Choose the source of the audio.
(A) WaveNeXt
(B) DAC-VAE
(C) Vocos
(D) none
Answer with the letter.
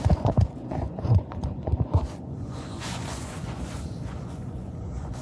C